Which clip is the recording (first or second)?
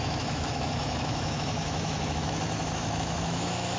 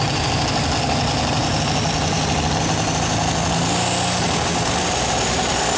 second